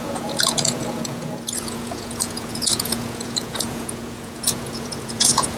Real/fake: fake